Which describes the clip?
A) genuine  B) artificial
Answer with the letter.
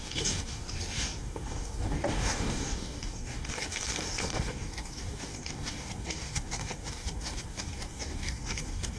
B